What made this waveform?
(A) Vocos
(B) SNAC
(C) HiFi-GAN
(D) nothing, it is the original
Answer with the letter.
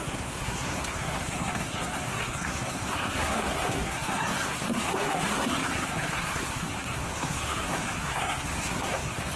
B